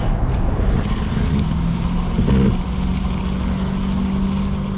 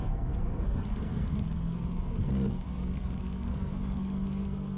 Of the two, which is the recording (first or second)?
first